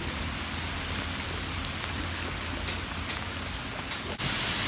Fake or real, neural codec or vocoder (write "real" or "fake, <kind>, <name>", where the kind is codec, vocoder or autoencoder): real